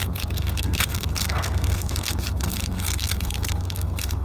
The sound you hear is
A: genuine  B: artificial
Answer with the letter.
B